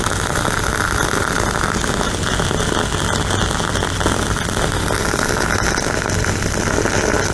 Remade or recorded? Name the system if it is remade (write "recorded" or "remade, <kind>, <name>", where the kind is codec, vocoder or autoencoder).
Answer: recorded